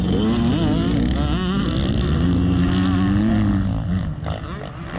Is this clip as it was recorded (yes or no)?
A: yes